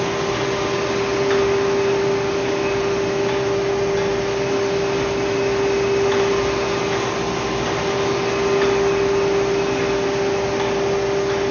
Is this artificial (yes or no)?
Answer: no